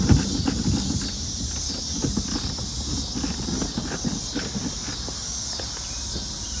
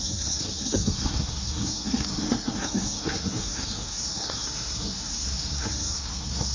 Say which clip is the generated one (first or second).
second